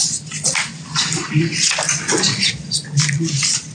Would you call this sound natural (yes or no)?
yes